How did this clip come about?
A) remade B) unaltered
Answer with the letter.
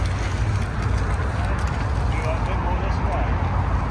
B